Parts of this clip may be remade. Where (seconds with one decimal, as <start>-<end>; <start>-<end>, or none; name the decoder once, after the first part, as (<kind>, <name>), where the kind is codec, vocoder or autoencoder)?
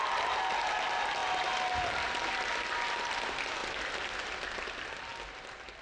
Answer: none